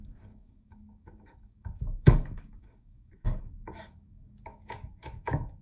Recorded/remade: remade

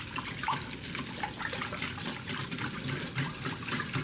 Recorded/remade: recorded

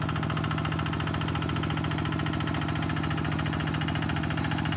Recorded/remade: recorded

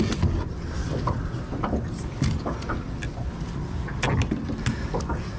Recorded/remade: recorded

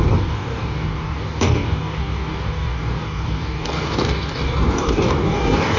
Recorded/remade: remade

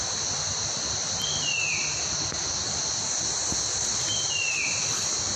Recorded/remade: recorded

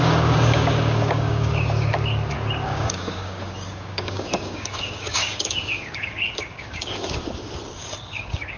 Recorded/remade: remade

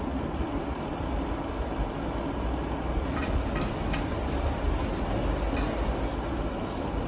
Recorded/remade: recorded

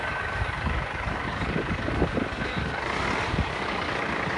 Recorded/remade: remade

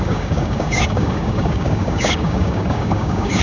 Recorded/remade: remade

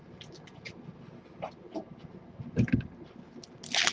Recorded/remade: recorded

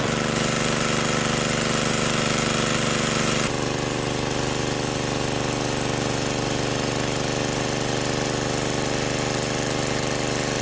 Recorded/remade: recorded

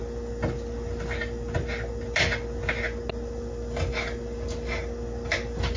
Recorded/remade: recorded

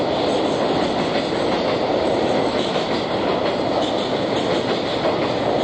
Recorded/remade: recorded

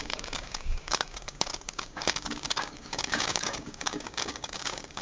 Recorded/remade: remade